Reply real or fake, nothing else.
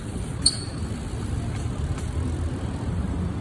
fake